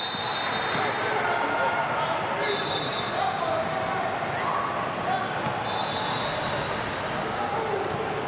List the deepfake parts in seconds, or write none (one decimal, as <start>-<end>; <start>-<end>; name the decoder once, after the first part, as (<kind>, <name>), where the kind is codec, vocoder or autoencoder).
none